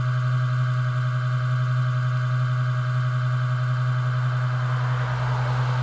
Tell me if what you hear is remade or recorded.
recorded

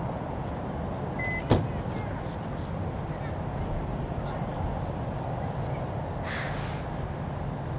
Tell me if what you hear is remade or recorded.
recorded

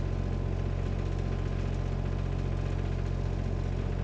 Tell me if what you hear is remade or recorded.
recorded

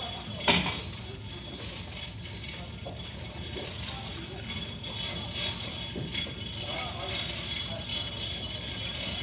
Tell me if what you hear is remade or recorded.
recorded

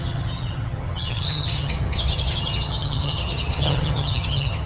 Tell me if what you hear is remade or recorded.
remade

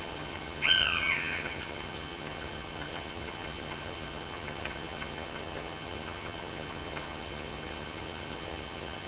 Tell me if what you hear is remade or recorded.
remade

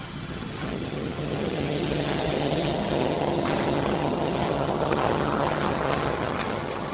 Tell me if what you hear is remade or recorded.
remade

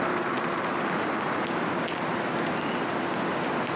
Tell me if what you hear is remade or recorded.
recorded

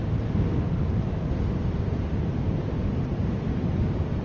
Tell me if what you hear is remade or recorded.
recorded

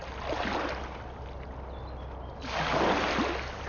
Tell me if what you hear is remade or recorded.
recorded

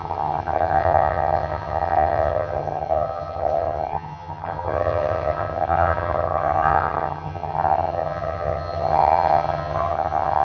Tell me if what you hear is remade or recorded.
remade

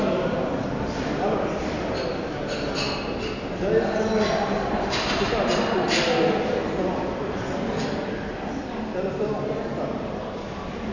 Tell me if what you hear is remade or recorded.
recorded